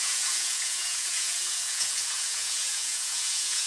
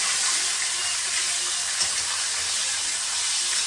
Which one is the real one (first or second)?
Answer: second